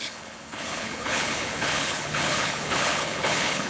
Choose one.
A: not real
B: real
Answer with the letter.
A